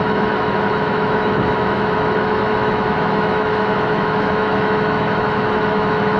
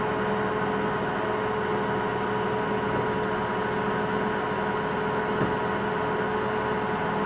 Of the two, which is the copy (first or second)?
first